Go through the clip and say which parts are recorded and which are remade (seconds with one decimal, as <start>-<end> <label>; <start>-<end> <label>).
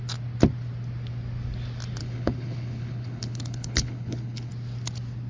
0.0-2.0 recorded; 2.0-4.5 remade; 4.5-5.3 recorded